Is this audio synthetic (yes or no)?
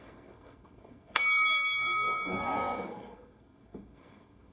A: yes